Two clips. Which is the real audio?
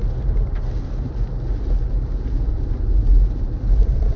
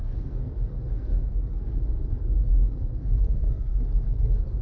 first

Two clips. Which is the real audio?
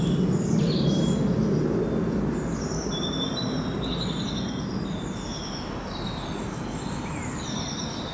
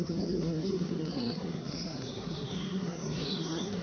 first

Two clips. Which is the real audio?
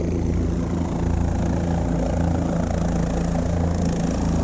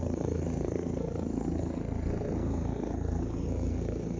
first